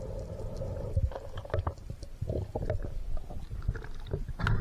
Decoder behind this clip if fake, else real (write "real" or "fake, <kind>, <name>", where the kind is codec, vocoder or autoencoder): real